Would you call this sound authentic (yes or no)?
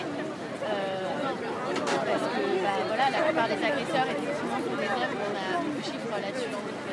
yes